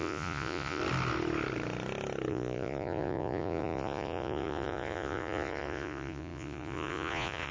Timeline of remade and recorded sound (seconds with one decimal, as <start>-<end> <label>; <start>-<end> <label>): 0.0-0.8 remade; 0.8-2.3 recorded; 2.3-7.5 remade